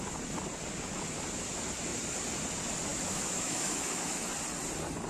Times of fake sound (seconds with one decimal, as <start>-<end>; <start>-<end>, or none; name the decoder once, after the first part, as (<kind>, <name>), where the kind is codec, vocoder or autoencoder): 2.9-4.2 (autoencoder, DAC-VAE)